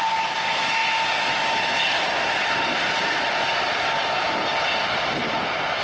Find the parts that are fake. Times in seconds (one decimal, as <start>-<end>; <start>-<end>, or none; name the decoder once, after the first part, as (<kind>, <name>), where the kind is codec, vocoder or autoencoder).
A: none